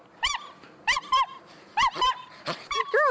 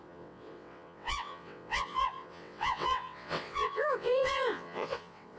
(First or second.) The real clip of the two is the first